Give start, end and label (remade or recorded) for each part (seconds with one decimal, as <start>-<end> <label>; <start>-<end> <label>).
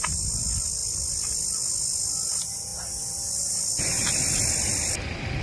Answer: 0.0-5.4 recorded